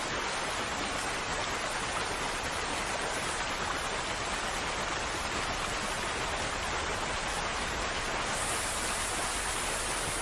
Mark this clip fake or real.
real